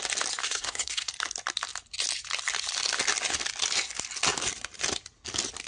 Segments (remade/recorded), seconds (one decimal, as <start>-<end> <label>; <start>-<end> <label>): 0.0-0.4 recorded; 0.4-1.1 remade; 1.1-5.7 recorded